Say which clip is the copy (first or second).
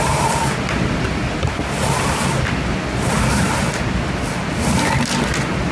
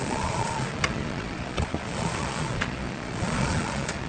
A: second